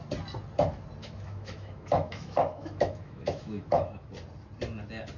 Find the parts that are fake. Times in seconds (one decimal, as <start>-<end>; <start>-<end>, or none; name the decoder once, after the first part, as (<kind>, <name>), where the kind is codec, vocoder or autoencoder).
1.0-4.1 (autoencoder, DAC-VAE)